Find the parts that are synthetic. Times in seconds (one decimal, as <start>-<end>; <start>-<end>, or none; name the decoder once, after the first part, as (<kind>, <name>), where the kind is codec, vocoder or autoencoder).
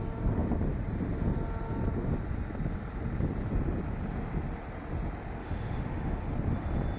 5.4-6.3 (autoencoder, DAC-VAE)